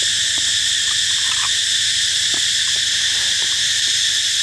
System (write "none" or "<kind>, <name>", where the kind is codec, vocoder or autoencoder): vocoder, BigVGAN v2